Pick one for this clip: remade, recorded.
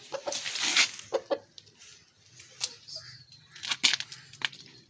recorded